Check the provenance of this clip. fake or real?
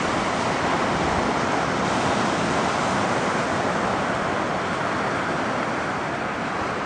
real